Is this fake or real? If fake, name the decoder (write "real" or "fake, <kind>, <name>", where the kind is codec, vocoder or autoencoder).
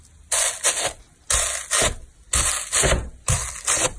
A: real